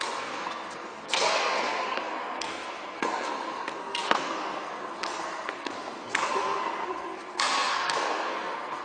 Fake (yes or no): yes